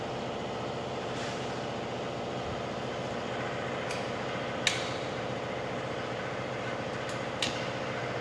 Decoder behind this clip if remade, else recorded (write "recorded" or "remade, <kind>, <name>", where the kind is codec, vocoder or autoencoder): recorded